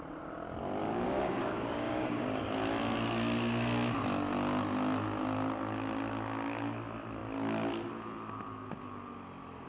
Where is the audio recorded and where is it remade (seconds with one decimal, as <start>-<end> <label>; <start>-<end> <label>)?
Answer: 0.0-0.8 recorded; 0.8-2.4 remade; 2.4-9.7 recorded